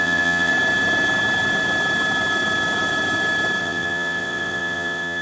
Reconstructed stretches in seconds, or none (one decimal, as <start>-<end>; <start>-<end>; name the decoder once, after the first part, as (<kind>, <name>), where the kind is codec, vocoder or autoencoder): 0.0-0.5 (vocoder, WaveNeXt); 3.6-5.2